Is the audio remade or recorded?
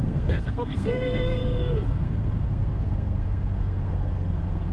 remade